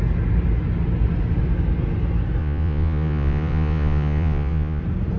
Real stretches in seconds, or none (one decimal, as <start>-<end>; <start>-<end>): 0.0-2.4; 4.8-5.2